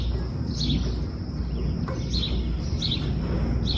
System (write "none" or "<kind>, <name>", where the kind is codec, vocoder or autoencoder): none